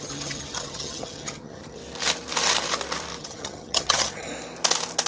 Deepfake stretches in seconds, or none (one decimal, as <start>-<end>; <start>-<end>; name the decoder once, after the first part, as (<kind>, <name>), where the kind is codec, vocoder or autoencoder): 0.0-1.8 (vocoder, HiFi-GAN); 3.2-4.3